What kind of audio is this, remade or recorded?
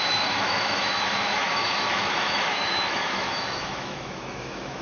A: remade